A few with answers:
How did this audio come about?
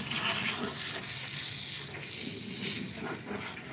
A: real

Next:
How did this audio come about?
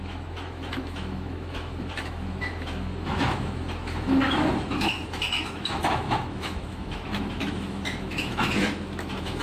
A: fake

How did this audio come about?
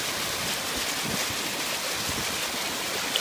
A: real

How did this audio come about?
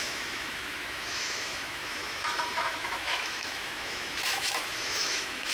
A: fake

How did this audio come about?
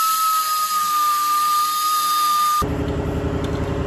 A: real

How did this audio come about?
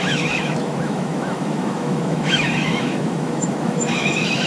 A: fake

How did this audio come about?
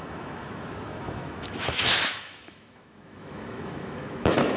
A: fake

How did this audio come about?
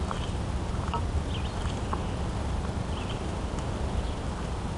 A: real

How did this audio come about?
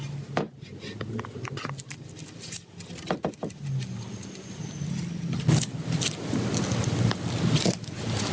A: real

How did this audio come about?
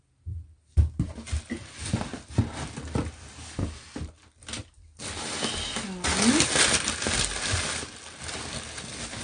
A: real